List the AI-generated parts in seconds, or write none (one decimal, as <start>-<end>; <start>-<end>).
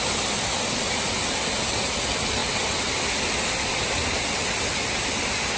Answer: none